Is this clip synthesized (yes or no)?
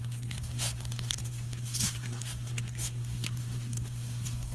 yes